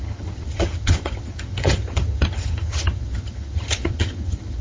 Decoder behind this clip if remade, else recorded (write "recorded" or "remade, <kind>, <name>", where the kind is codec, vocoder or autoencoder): remade, vocoder, HiFi-GAN